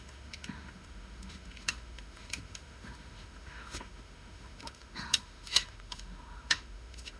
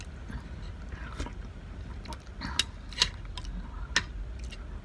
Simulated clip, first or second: first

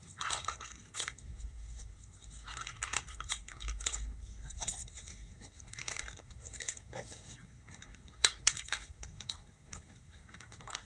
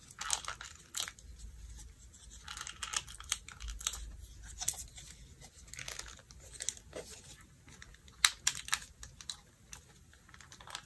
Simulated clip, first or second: first